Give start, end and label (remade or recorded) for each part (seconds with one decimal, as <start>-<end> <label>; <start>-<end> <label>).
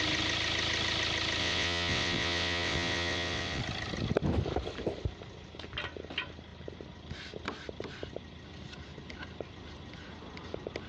0.0-1.4 recorded; 1.4-3.6 remade; 3.6-10.9 recorded